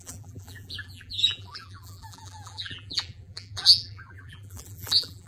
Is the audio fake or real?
fake